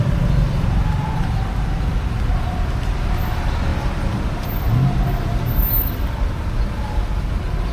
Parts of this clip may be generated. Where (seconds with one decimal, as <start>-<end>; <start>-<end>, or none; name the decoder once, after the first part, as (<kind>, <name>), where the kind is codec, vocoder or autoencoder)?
none